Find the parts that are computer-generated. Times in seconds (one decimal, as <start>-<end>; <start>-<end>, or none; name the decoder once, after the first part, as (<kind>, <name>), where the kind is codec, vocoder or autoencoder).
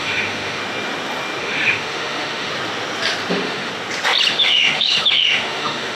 0.0-0.6 (autoencoder, DAC-VAE); 1.4-2.5; 3.3-3.7; 4.3-6.0